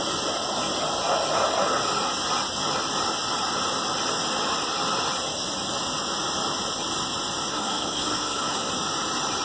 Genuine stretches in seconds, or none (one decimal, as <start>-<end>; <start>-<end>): 0.0-7.5; 8.7-9.4